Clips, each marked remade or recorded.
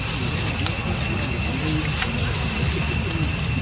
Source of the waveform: recorded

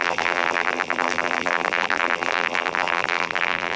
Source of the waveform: remade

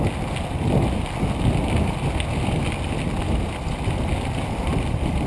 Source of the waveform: recorded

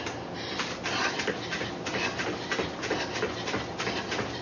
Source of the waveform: recorded